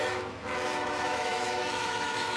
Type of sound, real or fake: fake